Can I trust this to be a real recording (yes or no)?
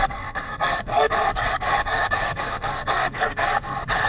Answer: no